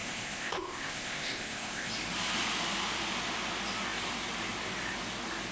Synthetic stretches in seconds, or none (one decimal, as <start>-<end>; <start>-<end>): 0.0-1.9